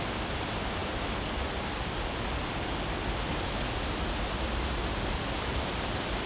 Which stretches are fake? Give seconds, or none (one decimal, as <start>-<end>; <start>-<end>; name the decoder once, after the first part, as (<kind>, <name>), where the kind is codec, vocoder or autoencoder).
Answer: none